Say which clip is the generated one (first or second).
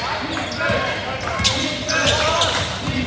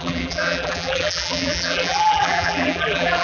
second